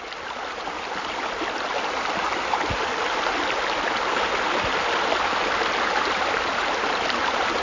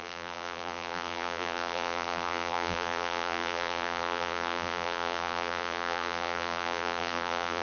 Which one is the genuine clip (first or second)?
first